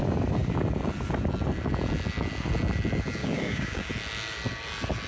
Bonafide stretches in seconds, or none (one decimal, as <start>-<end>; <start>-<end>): 0.0-3.2; 3.9-5.1